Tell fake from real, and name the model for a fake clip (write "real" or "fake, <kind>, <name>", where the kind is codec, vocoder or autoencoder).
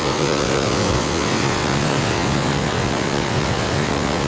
fake, vocoder, WaveNeXt